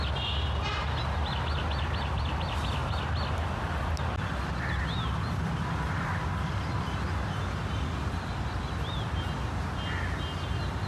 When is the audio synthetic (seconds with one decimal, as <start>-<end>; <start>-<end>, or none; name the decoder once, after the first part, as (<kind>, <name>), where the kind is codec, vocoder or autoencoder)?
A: none